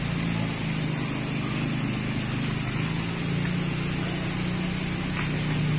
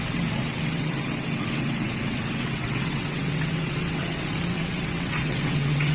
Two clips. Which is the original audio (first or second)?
first